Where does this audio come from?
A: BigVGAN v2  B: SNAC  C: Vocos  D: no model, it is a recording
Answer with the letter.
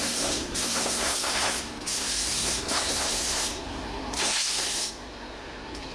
B